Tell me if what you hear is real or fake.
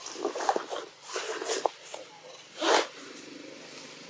real